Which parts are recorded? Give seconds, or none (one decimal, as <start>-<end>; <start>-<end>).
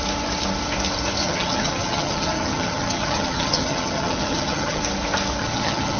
0.0-1.2; 4.8-5.4